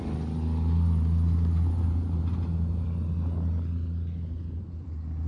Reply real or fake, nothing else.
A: real